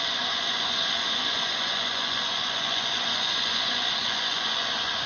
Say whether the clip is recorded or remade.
remade